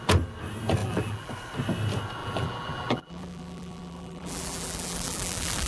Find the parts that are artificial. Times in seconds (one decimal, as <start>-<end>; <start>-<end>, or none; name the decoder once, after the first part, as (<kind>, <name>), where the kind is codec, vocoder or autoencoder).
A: 0.8-1.3 (vocoder, BigVGAN v2); 2.2-5.7